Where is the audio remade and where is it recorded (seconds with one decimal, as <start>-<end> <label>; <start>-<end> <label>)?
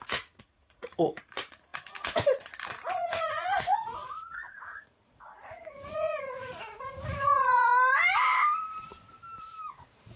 0.0-7.7 remade; 7.7-9.7 recorded; 9.7-10.2 remade